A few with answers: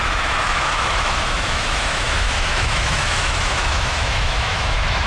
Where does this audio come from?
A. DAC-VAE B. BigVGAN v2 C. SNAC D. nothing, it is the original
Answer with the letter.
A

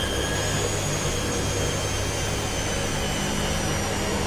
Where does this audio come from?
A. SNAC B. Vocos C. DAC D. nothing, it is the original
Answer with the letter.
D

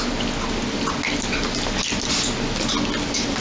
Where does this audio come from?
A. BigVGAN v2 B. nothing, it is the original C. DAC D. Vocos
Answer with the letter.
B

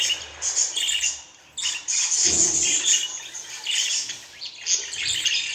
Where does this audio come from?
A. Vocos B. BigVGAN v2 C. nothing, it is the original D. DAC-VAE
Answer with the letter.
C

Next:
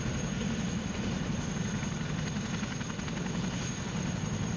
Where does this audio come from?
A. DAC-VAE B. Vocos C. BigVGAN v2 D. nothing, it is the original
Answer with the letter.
D